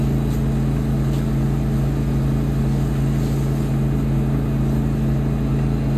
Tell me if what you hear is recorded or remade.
recorded